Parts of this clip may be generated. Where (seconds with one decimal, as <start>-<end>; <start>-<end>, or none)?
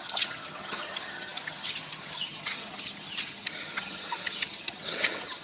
0.0-5.4